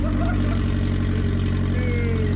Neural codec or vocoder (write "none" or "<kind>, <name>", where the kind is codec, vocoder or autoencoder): none